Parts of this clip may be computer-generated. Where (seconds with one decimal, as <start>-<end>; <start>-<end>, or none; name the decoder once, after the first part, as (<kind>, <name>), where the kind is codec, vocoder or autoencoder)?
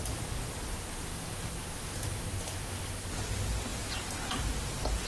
1.1-3.1 (autoencoder, DAC-VAE)